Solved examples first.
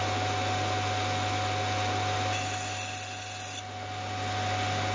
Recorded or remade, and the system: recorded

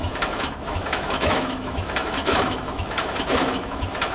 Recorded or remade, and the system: remade, autoencoder, DAC-VAE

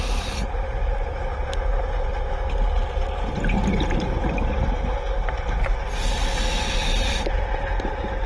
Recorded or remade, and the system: recorded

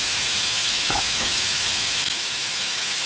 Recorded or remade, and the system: remade, autoencoder, DAC-VAE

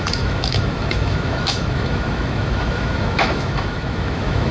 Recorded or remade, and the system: remade, autoencoder, DAC-VAE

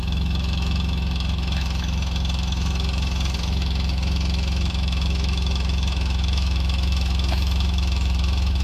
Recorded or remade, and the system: remade, autoencoder, DAC-VAE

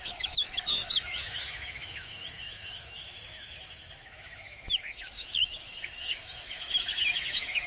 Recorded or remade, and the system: remade, autoencoder, DAC-VAE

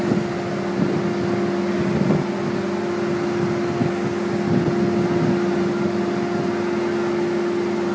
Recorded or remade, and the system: recorded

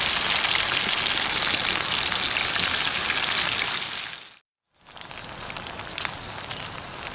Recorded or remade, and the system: recorded